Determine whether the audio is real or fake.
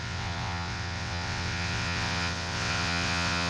fake